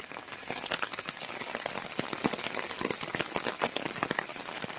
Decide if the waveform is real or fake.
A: real